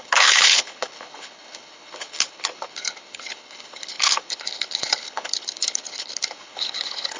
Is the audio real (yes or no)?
no